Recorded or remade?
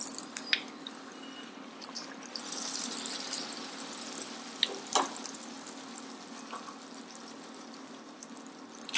recorded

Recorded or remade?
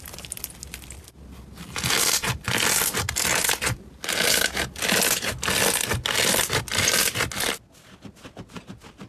recorded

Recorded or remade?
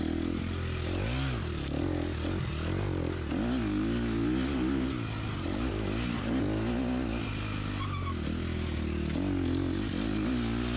recorded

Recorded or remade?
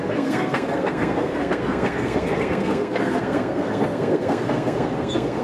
remade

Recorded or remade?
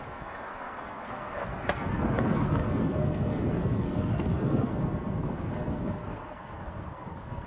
remade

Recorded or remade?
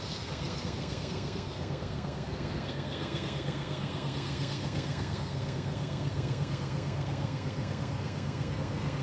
remade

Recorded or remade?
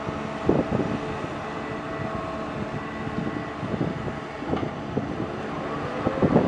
recorded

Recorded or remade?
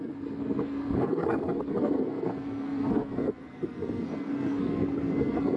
remade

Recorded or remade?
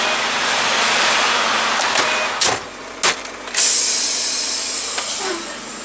recorded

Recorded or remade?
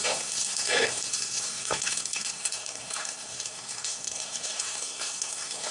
remade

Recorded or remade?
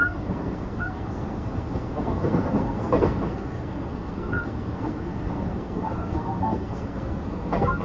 remade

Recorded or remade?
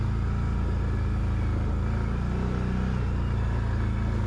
recorded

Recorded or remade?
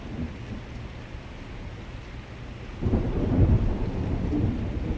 recorded